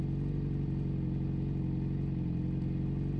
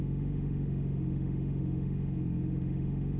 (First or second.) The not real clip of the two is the second